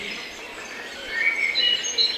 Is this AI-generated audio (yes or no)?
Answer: no